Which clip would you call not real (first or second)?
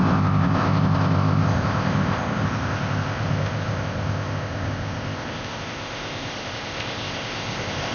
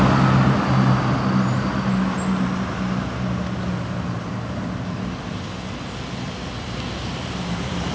first